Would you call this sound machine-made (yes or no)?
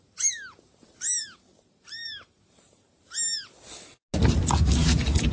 no